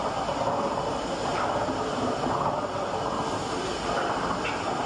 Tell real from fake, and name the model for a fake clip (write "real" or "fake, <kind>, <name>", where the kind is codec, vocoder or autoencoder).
real